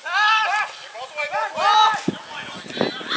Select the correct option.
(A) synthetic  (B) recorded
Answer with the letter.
B